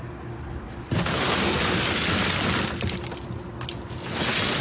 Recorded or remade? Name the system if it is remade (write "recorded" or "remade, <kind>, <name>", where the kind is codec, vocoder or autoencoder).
recorded